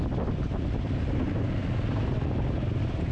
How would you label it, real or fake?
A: real